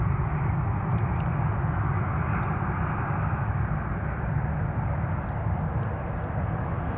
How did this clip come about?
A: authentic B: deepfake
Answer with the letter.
A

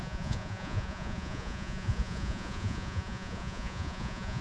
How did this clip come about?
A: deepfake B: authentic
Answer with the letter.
A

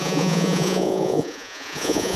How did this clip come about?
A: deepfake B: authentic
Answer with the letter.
A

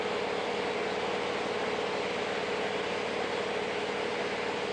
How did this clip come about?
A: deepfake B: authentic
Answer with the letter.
B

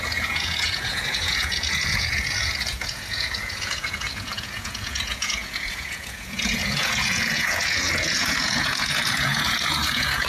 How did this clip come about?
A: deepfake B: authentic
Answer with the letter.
A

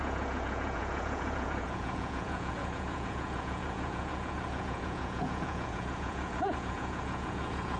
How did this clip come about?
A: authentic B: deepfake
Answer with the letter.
B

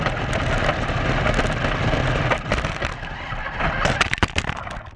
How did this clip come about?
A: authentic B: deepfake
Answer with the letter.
A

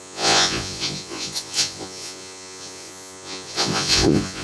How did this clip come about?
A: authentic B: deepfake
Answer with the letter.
B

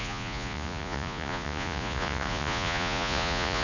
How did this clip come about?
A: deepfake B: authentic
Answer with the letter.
A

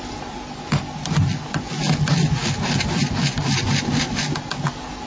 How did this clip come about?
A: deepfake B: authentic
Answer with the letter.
B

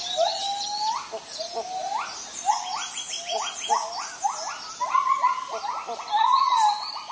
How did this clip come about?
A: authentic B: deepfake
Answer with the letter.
A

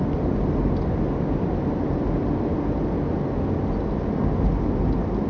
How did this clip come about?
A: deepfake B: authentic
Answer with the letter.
B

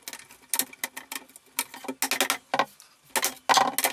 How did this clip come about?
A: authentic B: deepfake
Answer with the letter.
A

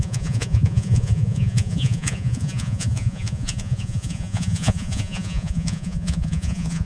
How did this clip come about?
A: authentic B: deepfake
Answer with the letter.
B